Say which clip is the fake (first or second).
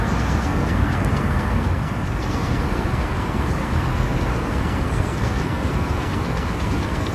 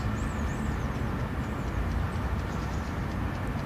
first